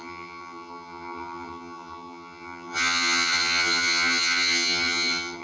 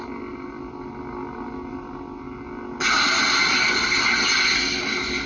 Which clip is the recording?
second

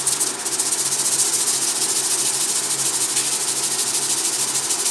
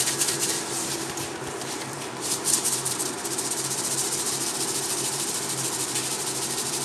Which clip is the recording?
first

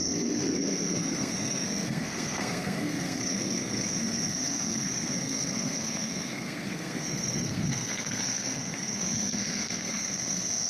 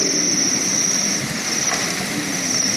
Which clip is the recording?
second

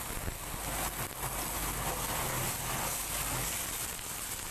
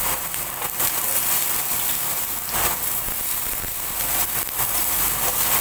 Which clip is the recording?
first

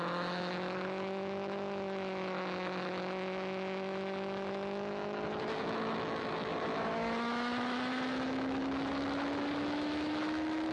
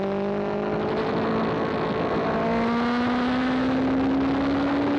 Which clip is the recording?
second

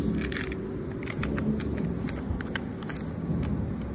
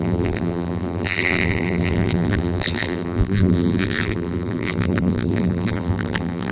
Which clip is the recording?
first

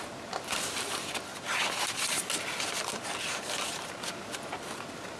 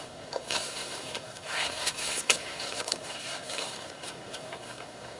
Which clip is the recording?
first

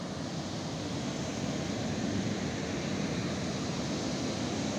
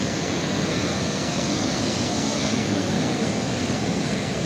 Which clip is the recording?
first